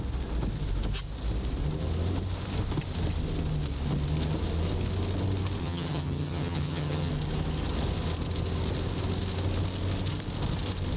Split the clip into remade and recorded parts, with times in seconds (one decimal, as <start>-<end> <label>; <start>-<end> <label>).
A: 0.0-5.6 recorded; 5.6-7.1 remade; 7.1-11.0 recorded